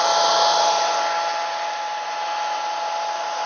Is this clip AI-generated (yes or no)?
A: no